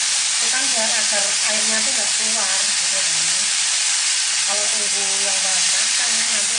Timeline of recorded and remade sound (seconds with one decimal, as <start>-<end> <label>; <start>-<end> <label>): 0.0-6.6 recorded